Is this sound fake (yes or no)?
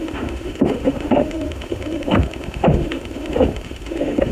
yes